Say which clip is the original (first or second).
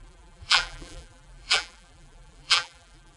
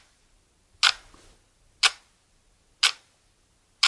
second